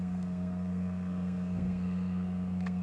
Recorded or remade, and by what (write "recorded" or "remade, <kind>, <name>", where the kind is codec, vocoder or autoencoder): remade, codec, SNAC